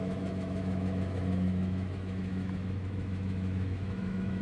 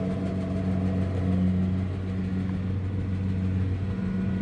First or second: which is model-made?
first